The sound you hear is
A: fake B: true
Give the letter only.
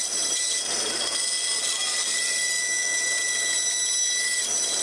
B